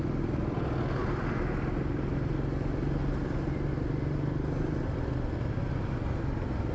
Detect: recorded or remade recorded